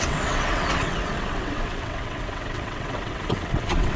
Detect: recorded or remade remade